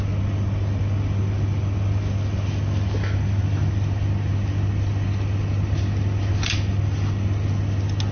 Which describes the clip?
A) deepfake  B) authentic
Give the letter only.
B